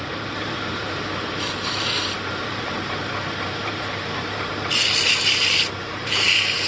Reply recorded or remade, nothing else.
remade